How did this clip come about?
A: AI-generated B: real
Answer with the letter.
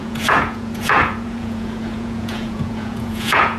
A